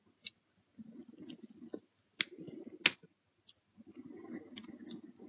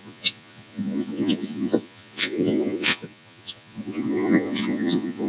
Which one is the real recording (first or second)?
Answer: first